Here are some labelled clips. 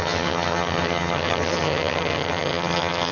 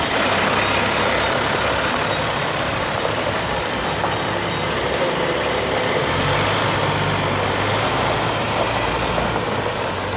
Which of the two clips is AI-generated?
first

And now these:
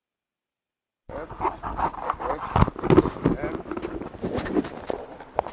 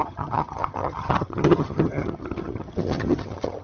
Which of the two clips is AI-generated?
second